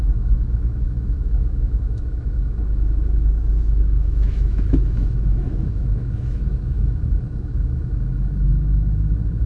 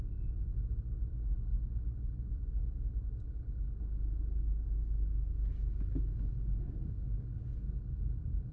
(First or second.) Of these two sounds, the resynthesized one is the first